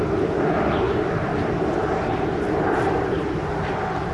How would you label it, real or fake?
real